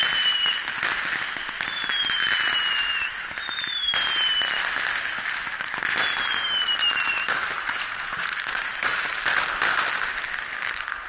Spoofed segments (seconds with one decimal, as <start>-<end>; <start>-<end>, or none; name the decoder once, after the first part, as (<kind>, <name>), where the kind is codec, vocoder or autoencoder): 7.6-8.7 (vocoder, Vocos)